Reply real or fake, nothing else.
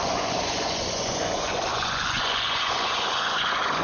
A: fake